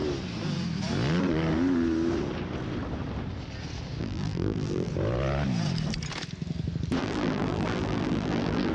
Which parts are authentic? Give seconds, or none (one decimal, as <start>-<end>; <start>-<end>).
0.0-4.0; 4.9-7.0